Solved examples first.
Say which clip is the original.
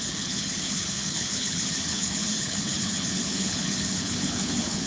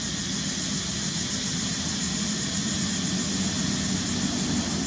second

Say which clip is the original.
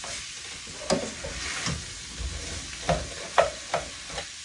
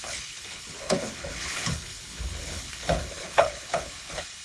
first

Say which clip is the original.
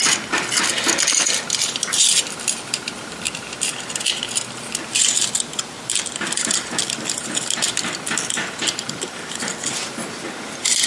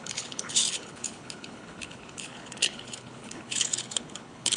first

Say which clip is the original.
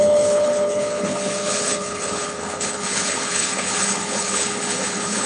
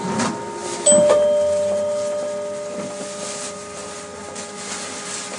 second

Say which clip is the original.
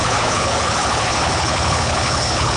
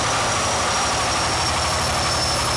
second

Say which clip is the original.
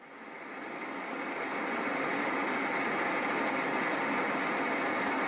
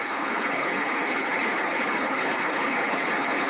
first